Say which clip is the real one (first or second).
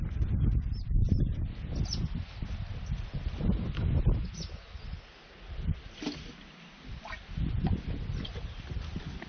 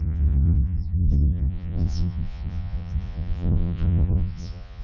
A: first